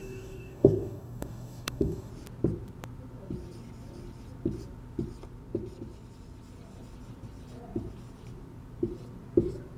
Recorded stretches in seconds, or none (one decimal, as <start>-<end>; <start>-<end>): 2.1-9.8